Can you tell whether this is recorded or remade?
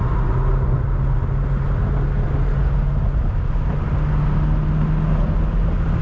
recorded